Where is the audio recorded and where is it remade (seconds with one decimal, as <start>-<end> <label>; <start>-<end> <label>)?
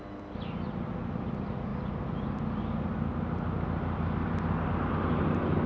0.0-5.7 recorded